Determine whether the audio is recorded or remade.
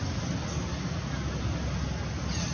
recorded